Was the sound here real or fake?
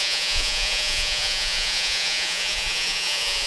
fake